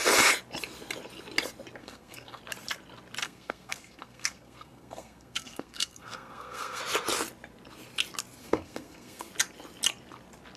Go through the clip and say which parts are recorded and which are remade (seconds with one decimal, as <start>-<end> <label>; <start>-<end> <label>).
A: 0.0-1.8 recorded; 1.8-2.4 remade; 2.4-3.2 recorded; 3.2-6.8 remade; 6.8-8.4 recorded; 8.4-9.3 remade; 9.3-10.6 recorded